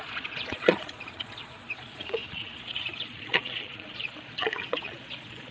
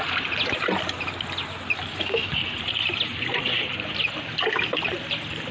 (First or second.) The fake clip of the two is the first